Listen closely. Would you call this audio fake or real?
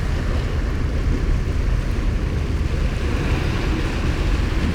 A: real